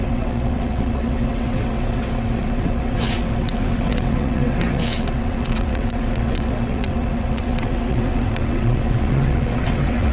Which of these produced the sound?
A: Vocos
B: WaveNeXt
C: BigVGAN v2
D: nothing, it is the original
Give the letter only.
B